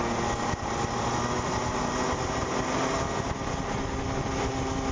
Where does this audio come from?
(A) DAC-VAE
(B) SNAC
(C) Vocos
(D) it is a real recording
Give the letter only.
D